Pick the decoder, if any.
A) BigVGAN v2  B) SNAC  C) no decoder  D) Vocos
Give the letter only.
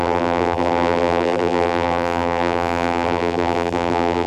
A